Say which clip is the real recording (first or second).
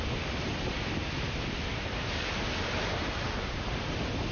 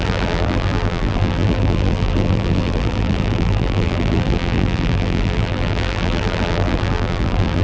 first